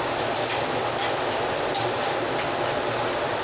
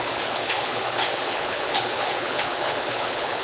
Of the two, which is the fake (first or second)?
second